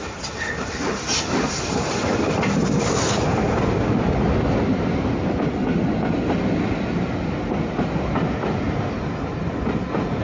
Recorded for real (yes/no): yes